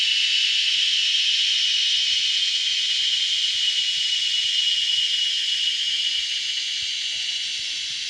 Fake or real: fake